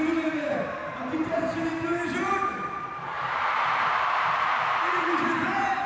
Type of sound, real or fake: fake